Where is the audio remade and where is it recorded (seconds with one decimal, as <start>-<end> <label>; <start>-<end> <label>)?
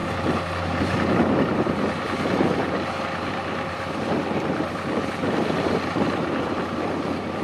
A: 0.0-0.8 recorded; 0.8-7.4 remade